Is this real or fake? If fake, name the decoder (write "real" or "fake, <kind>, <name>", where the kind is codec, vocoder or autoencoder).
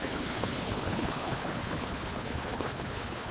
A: fake, codec, HILCodec